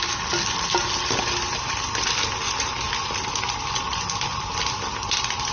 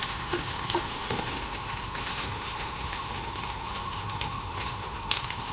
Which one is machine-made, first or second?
second